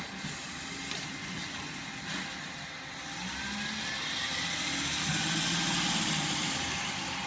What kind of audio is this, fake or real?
real